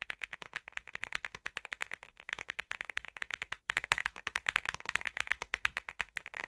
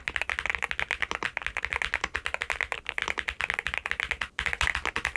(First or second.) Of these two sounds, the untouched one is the second